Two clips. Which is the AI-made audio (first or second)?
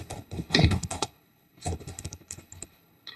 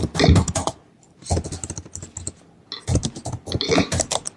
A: first